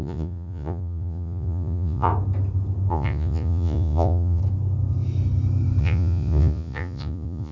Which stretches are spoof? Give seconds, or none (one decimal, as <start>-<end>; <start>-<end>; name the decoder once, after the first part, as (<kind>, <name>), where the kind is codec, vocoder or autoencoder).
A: 0.0-2.1 (vocoder, Vocos); 2.9-4.4; 5.8-7.5